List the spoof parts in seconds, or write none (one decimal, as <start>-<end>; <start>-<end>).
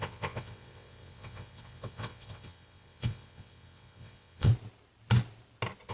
0.0-4.5